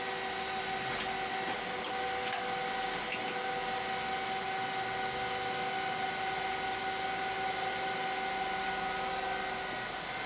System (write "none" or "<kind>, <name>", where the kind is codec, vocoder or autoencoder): none